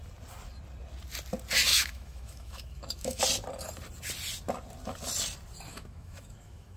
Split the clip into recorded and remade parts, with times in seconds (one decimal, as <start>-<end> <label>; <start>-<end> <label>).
0.0-1.7 recorded; 1.7-3.2 remade; 3.2-5.7 recorded; 5.7-6.8 remade